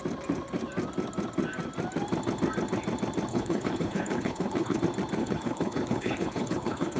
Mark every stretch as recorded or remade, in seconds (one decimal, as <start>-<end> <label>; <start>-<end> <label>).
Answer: 0.0-3.3 recorded; 3.3-4.8 remade; 4.8-5.2 recorded; 5.2-7.0 remade